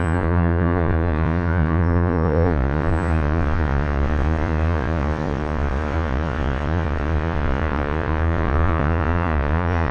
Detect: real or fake fake